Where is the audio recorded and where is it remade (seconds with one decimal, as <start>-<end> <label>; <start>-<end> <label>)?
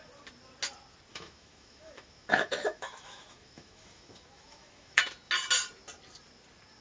0.0-1.1 recorded; 1.1-5.0 remade; 5.0-6.8 recorded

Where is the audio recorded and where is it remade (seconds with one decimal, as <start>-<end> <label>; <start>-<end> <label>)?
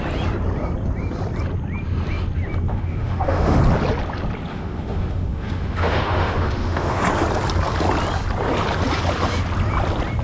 0.0-2.7 recorded; 2.7-3.6 remade; 3.6-4.5 recorded; 4.5-7.0 remade; 7.0-10.2 recorded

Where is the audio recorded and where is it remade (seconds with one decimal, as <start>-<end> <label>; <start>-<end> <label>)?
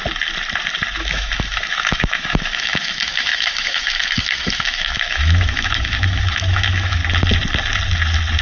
0.0-1.0 recorded; 1.0-7.0 remade; 7.0-8.4 recorded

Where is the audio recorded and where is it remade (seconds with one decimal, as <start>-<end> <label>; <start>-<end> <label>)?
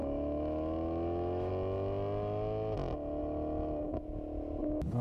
0.0-1.5 remade; 1.5-5.0 recorded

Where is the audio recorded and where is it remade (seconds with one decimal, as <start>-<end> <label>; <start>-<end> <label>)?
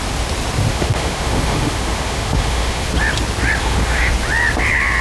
0.0-0.7 recorded; 0.7-2.9 remade; 2.9-3.6 recorded; 3.6-4.1 remade; 4.1-5.0 recorded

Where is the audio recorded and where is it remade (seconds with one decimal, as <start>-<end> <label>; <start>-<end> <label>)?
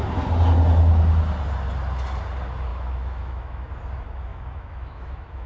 0.0-2.7 recorded; 2.7-3.7 remade; 3.7-4.3 recorded; 4.3-5.5 remade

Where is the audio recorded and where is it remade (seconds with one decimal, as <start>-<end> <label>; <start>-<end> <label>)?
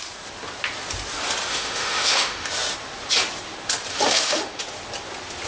0.0-1.5 recorded; 1.5-2.5 remade; 2.5-3.9 recorded; 3.9-4.6 remade; 4.6-5.5 recorded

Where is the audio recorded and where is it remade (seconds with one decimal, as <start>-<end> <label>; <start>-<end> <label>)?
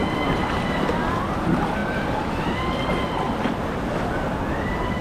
0.0-5.0 recorded